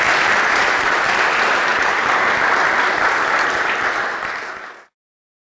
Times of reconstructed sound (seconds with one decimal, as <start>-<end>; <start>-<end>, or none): none